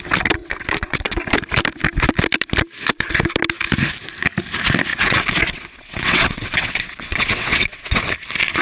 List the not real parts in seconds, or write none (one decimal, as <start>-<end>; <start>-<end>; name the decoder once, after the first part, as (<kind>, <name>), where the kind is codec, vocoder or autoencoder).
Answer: 0.4-1.2 (vocoder, WaveNeXt); 4.9-8.0